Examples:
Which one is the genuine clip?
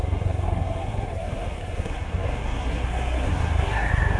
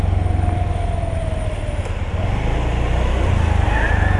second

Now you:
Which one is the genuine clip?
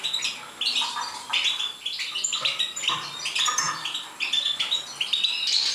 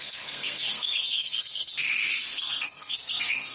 first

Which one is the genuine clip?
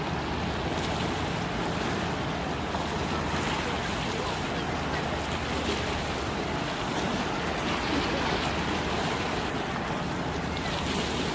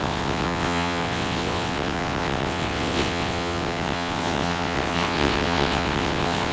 first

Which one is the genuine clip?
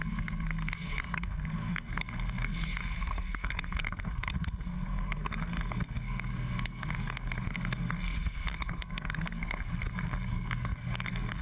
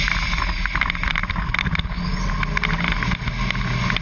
second